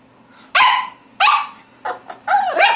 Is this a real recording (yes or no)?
yes